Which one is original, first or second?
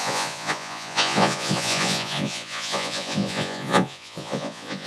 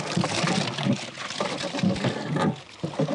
second